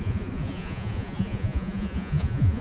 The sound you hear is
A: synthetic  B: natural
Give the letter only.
A